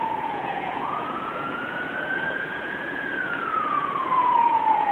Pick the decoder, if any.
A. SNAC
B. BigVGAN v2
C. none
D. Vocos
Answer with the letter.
D